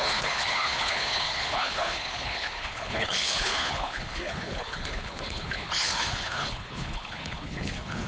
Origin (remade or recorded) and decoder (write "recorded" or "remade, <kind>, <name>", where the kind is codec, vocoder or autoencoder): remade, codec, HILCodec